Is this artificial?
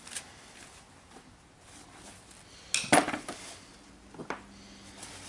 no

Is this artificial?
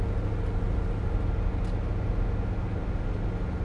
no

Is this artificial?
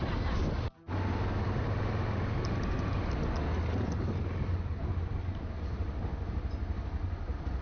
no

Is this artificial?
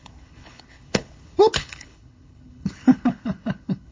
yes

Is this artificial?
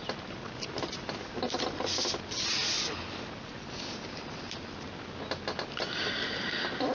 no